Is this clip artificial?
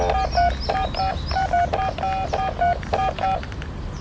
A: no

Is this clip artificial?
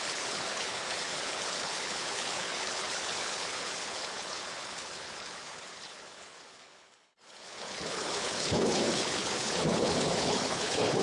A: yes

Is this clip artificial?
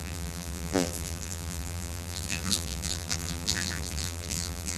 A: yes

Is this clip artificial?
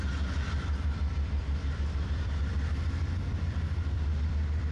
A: yes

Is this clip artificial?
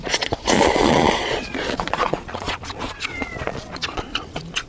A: yes